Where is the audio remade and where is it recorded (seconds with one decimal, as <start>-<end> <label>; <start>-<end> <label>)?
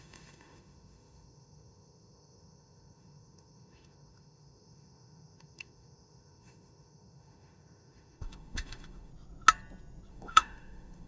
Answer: 0.0-9.1 remade; 9.1-10.1 recorded; 10.1-11.1 remade